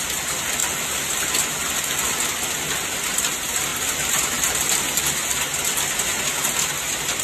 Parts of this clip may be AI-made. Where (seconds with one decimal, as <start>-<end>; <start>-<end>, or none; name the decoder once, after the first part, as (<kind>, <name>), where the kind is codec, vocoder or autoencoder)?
none